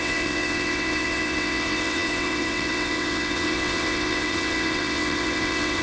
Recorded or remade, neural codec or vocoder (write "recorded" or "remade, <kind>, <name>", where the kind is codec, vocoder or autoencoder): remade, vocoder, WaveNeXt